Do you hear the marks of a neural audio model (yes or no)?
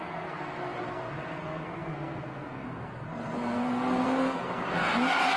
yes